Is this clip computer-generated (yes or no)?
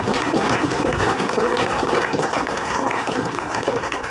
yes